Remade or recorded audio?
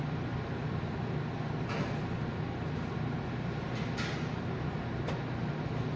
recorded